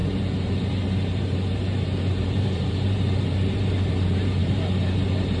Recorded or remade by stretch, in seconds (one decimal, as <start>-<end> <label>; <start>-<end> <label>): 0.0-5.4 remade